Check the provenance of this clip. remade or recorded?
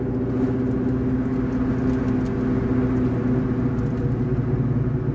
recorded